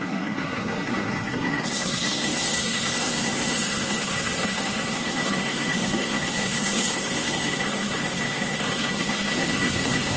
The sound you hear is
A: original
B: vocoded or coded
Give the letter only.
B